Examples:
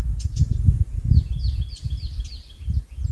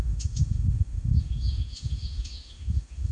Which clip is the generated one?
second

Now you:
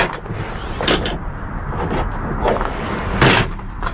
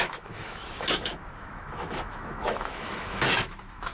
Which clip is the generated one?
second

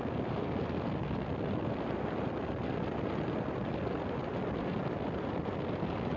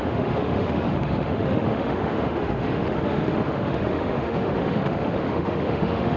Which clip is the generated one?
second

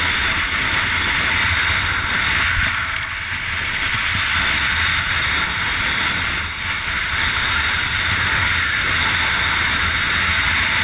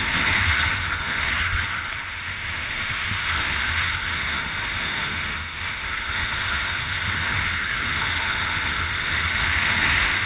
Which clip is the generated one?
second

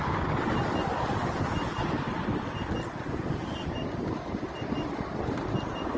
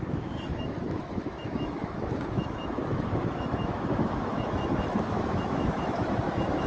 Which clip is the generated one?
second